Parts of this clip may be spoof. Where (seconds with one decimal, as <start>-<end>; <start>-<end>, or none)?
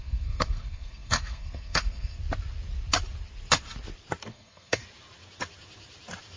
0.0-2.2; 4.3-4.8